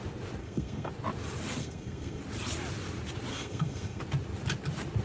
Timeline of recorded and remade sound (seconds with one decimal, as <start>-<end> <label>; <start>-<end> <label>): 0.0-0.4 recorded; 0.4-0.9 remade; 0.9-1.6 recorded; 1.6-2.2 remade; 2.2-3.3 recorded; 3.3-4.0 remade; 4.0-5.0 recorded